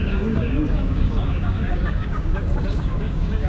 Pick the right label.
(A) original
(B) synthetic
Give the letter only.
B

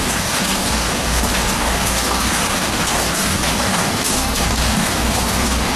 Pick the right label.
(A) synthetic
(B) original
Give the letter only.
A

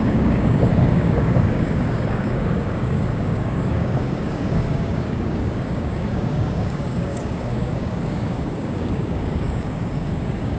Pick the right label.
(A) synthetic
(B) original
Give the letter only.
A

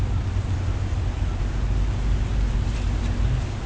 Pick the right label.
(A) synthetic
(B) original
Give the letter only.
B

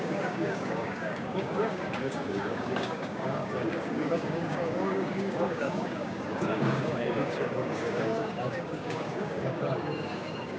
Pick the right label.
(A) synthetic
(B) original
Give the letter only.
A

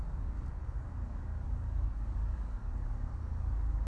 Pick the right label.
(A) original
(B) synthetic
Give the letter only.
B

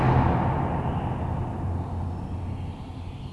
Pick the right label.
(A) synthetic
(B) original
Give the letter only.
B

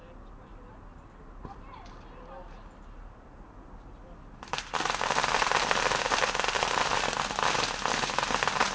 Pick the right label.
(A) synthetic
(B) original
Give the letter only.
B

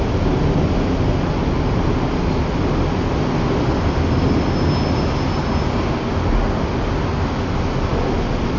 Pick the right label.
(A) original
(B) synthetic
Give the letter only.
A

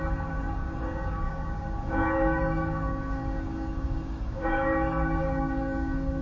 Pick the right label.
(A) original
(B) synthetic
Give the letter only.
B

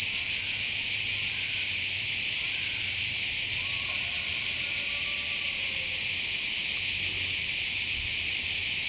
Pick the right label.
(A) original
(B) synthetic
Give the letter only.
A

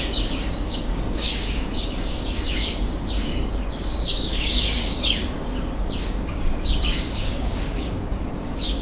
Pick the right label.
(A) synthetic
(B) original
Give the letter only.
A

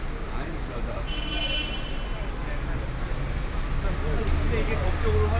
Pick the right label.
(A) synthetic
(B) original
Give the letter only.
B